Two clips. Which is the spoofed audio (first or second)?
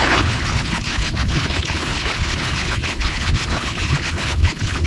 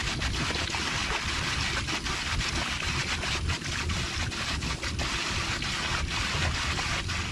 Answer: first